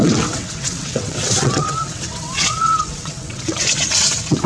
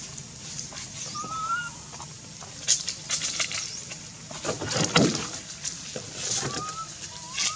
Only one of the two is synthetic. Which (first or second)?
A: first